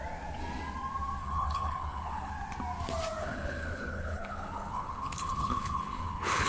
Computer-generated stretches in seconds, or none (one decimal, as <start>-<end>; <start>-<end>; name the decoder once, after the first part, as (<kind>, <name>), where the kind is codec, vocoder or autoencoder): 1.2-2.3 (codec, HILCodec); 3.2-6.5